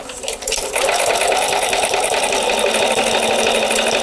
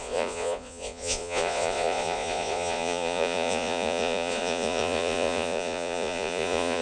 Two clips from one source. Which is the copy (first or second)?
second